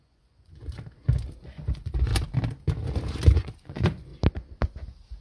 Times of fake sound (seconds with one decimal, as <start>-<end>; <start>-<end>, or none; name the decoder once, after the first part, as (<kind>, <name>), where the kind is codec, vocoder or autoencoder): 0.0-0.6 (vocoder, Vocos); 1.4-2.1; 3.3-4.1